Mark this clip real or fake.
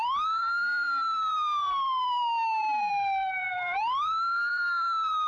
fake